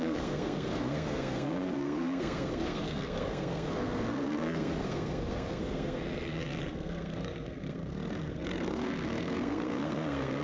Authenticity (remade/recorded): remade